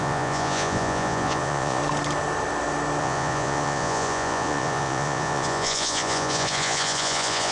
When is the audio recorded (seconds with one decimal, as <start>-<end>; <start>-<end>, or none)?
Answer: 1.8-3.0

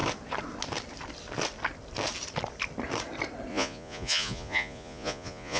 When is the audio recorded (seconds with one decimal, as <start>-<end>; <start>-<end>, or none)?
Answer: 0.0-3.5